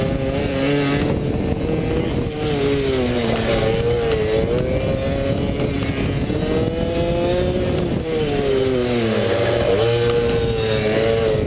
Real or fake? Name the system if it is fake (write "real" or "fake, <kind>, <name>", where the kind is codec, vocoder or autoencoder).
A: real